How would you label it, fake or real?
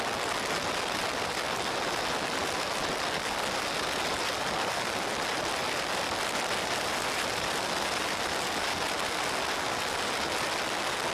real